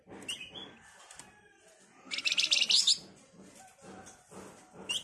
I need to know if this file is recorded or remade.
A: recorded